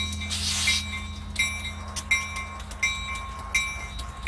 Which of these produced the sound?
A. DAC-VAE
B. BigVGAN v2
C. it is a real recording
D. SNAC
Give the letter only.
C